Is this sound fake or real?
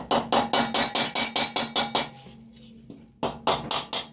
real